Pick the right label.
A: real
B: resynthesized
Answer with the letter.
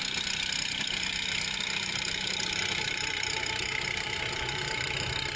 B